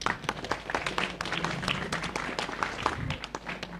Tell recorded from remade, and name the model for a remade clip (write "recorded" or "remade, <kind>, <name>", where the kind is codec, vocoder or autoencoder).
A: recorded